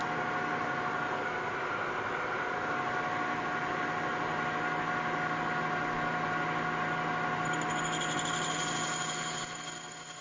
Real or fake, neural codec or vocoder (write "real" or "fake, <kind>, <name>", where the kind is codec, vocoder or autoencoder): real